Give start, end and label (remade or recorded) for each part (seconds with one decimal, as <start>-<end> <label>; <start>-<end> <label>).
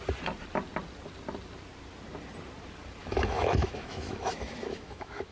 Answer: 0.0-3.0 recorded; 3.0-5.3 remade